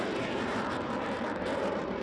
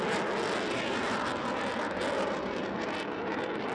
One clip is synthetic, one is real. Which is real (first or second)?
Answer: second